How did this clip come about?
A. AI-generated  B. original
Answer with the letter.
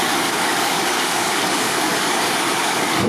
A